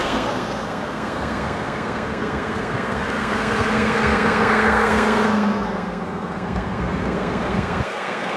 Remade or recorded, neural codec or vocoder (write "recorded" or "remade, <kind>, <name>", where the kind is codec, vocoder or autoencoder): remade, codec, SNAC